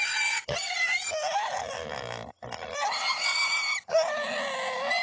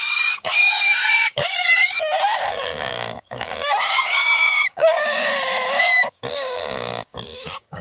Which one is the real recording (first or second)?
first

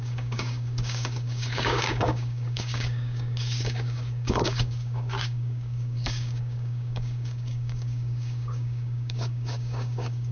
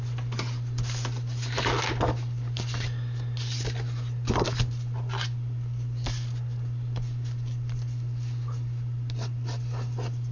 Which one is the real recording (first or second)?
second